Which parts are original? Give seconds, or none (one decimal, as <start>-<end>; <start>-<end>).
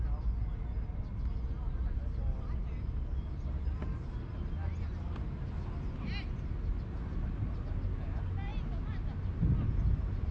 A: 0.0-10.3